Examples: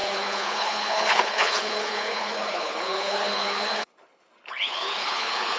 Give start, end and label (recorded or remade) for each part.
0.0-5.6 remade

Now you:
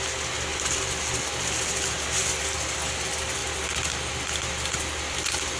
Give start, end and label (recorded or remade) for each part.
0.0-5.6 recorded

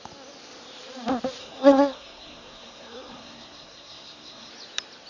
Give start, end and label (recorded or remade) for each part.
0.0-1.4 recorded; 1.4-4.5 remade; 4.5-5.1 recorded

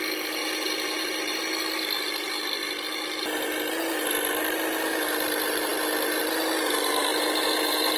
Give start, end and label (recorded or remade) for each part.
0.0-0.4 recorded; 0.4-1.4 remade; 1.4-7.1 recorded; 7.1-8.0 remade

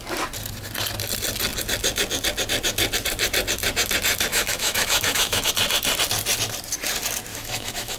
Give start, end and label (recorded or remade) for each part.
0.0-4.3 recorded; 4.3-5.5 remade; 5.5-7.3 recorded; 7.3-8.0 remade

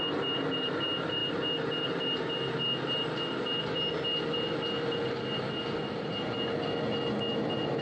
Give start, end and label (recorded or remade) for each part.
0.0-7.8 recorded

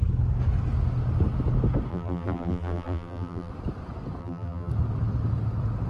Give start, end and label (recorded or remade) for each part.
0.0-1.9 recorded; 1.9-3.5 remade; 3.5-4.2 recorded; 4.2-4.7 remade; 4.7-5.9 recorded

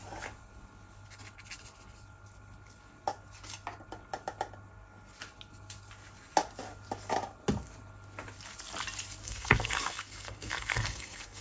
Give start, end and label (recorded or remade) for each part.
0.0-9.2 recorded; 9.2-11.4 remade